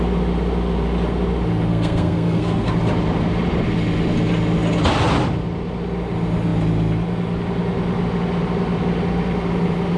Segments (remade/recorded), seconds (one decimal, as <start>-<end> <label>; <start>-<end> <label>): 0.0-1.7 recorded; 1.7-2.7 remade; 2.7-10.0 recorded